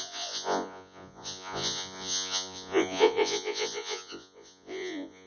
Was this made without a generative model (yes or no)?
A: no